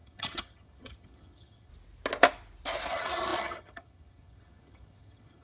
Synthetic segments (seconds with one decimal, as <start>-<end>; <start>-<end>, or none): 0.0-1.7; 2.9-5.4